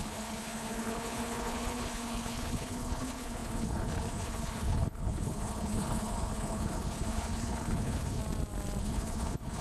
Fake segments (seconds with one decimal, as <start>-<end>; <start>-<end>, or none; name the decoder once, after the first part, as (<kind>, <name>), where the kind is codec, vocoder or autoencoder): 0.0-8.2 (codec, HILCodec); 8.8-9.6